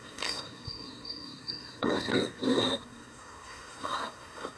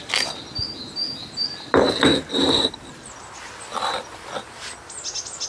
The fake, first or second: first